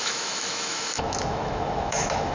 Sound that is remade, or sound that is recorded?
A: remade